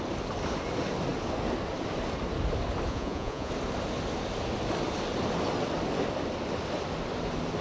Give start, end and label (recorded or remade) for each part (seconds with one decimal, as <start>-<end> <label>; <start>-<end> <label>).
0.0-2.9 recorded; 2.9-3.5 remade; 3.5-7.6 recorded